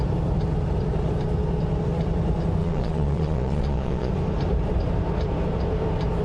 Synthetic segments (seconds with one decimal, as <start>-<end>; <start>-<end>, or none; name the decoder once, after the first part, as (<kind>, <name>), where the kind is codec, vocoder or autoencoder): 2.6-4.1 (vocoder, Vocos)